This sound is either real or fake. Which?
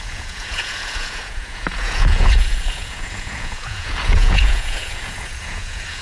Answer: fake